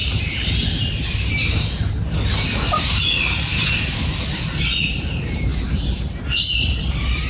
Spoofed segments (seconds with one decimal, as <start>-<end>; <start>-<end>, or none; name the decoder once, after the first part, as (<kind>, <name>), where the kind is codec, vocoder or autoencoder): none